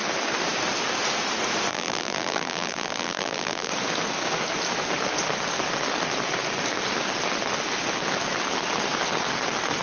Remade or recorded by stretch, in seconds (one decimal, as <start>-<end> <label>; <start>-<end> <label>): 0.0-1.7 recorded; 1.7-3.7 remade; 3.7-9.8 recorded